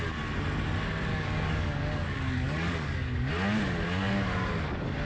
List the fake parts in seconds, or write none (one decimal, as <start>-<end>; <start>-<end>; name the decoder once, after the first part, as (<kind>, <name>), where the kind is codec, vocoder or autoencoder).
1.1-3.3 (codec, DAC); 4.0-5.1